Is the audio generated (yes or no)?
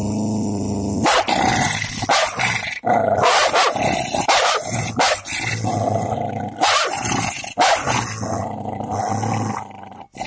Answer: no